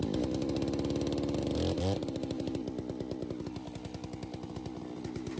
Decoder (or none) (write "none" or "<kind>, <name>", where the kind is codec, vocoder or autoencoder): none